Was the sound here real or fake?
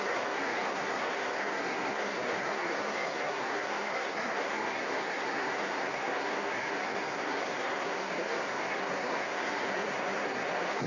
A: fake